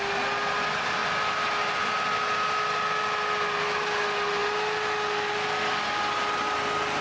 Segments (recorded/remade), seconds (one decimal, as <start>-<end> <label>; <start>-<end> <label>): 0.0-7.0 recorded